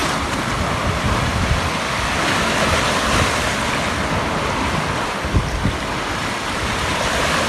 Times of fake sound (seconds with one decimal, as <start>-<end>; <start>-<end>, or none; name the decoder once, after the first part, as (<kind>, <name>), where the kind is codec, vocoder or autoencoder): 6.2-6.8 (vocoder, BigVGAN v2)